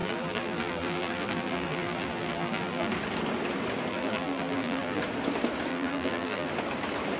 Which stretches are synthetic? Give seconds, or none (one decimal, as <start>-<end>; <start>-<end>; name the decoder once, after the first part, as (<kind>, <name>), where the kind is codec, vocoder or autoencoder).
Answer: 0.0-2.9 (vocoder, BigVGAN v2); 3.9-5.0; 5.7-6.5